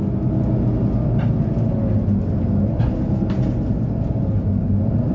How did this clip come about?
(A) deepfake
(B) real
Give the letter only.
B